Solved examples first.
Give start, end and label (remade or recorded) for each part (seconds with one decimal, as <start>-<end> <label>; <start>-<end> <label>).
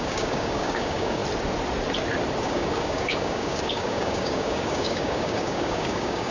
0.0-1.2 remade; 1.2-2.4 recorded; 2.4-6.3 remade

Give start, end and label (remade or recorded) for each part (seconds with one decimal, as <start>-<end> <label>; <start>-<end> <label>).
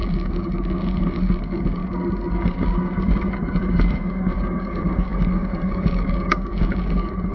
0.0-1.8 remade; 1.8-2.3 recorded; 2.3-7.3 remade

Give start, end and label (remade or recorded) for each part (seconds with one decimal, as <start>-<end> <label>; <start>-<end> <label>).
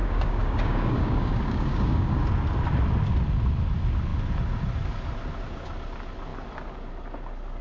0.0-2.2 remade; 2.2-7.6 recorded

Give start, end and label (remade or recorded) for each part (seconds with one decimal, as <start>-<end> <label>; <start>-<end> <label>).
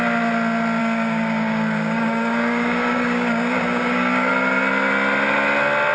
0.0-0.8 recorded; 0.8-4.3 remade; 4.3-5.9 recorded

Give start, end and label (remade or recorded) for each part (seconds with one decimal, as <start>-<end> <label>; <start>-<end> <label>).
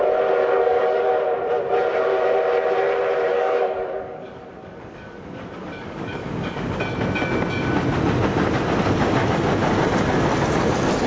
0.0-0.4 recorded; 0.4-1.1 remade; 1.1-3.3 recorded; 3.3-6.8 remade; 6.8-11.1 recorded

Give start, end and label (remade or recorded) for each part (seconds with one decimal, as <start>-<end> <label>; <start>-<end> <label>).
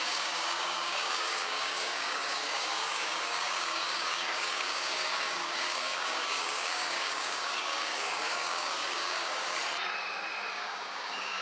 0.0-9.6 remade; 9.6-10.5 recorded; 10.5-11.4 remade